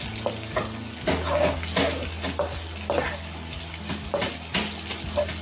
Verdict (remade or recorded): recorded